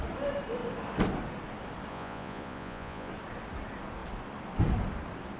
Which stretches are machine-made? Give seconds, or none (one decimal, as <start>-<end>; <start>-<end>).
1.9-3.1